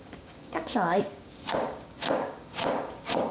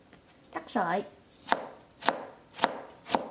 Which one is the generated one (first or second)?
first